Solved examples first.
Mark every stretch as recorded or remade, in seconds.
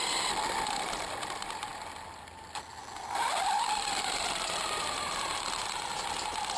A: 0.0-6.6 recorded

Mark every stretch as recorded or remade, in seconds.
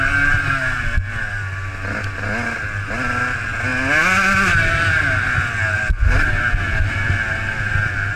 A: 0.0-8.2 recorded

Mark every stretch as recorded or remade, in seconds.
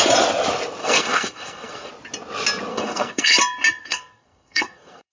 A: 0.0-0.8 recorded; 0.8-1.9 remade; 1.9-2.7 recorded; 2.7-3.4 remade; 3.4-3.8 recorded; 3.8-5.1 remade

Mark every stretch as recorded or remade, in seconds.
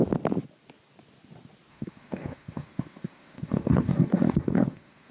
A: 0.0-1.7 recorded; 1.7-5.1 remade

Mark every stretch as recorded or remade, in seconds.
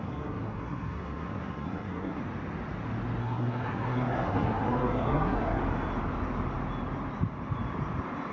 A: 0.0-2.2 remade; 2.2-3.2 recorded; 3.2-5.6 remade; 5.6-8.3 recorded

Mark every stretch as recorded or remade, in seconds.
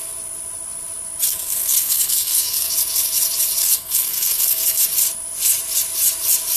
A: 0.0-1.3 recorded; 1.3-2.7 remade; 2.7-3.6 recorded; 3.6-4.8 remade; 4.8-6.6 recorded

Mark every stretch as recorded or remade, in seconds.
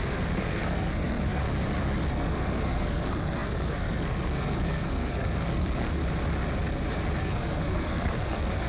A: 0.0-1.4 remade; 1.4-2.1 recorded; 2.1-6.0 remade; 6.0-7.2 recorded; 7.2-8.7 remade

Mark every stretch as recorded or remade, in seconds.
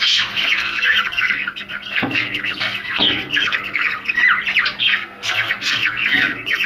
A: 0.0-4.2 remade; 4.2-4.8 recorded; 4.8-6.7 remade